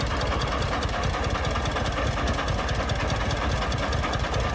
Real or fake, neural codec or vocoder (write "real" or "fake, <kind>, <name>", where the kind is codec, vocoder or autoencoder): real